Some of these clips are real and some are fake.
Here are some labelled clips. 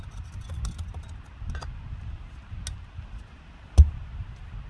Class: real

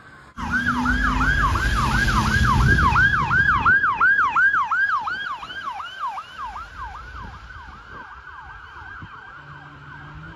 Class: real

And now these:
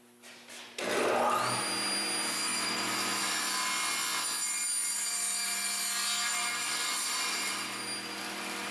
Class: real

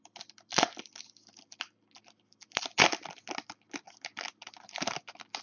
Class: real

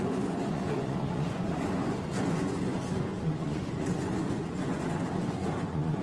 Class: fake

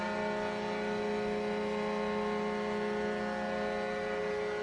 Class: real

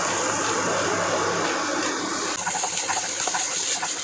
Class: fake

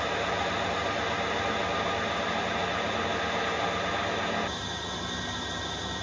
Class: real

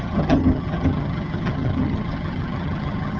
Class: fake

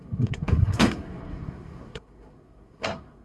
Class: fake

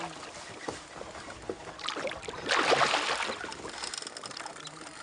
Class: real